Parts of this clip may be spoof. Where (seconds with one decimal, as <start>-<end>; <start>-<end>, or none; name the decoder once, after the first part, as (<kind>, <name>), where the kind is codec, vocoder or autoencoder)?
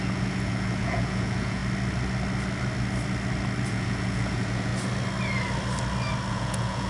0.0-1.6 (vocoder, Vocos); 3.7-4.7; 6.3-6.9